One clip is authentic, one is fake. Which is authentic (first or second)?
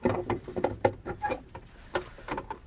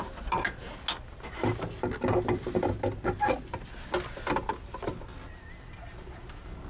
second